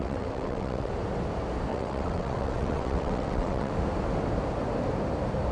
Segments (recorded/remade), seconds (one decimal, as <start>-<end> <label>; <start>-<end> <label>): 0.0-0.9 remade; 0.9-1.7 recorded; 1.7-3.7 remade; 3.7-5.5 recorded